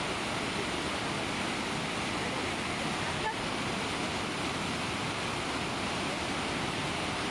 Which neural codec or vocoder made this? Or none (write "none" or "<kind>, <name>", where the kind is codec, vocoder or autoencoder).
none